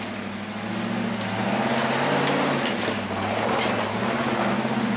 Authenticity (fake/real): real